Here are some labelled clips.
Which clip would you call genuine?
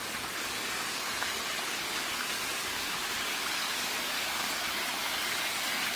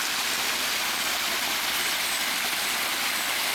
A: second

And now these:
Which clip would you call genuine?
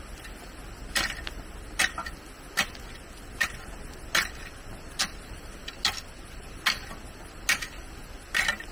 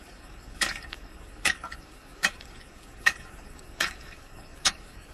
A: first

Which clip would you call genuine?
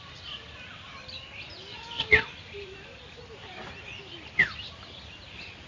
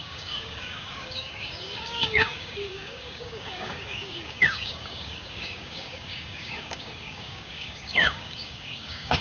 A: first